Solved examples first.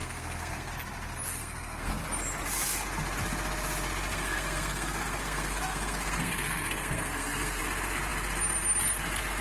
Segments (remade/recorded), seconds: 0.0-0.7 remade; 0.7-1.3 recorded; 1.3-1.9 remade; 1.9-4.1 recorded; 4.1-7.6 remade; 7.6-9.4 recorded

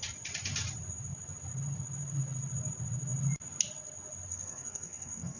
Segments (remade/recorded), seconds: 0.0-4.3 recorded; 4.3-5.4 remade

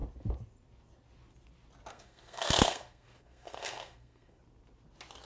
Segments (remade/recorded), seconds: 0.0-1.9 recorded; 1.9-4.4 remade; 4.4-5.2 recorded

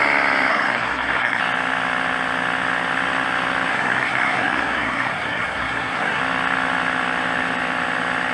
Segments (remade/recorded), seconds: 0.0-0.5 recorded; 0.5-1.4 remade; 1.4-3.7 recorded; 3.7-6.2 remade; 6.2-8.3 recorded

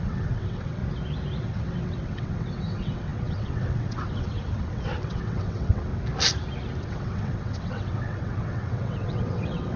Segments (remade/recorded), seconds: 0.0-0.8 remade; 0.8-1.4 recorded; 1.4-5.9 remade; 5.9-6.8 recorded; 6.8-9.8 remade

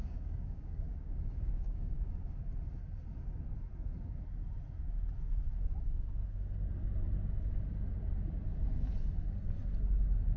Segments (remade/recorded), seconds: 0.0-2.1 remade; 2.1-10.4 recorded